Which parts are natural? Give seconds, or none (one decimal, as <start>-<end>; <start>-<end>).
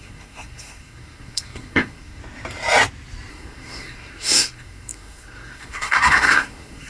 2.2-3.3